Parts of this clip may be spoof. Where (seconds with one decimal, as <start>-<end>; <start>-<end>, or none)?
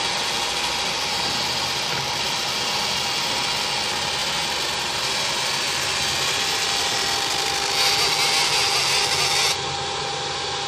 none